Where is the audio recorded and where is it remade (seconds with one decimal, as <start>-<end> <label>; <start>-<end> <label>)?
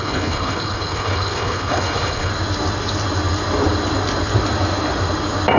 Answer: 0.0-2.3 remade; 2.3-5.6 recorded